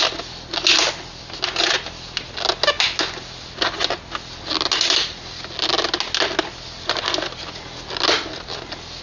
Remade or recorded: recorded